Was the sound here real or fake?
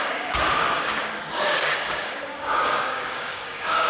fake